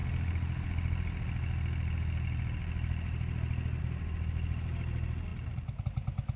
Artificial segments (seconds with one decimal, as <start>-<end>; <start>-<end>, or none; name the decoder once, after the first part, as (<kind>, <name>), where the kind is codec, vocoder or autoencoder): none